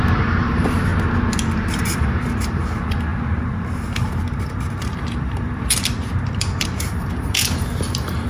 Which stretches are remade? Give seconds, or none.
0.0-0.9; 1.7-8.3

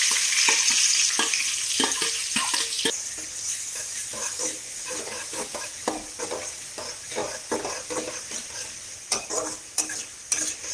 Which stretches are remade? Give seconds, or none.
3.5-5.7

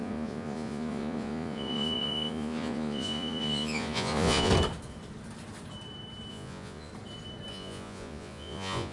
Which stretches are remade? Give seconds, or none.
0.0-4.5; 6.3-6.9; 7.5-8.9

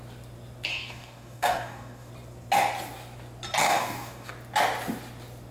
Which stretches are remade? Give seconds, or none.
0.7-2.1; 3.6-4.3

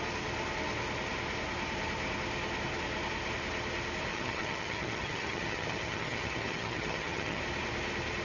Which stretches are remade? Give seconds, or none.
4.1-7.4

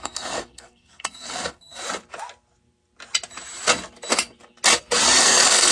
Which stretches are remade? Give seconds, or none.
0.0-1.8; 5.2-5.7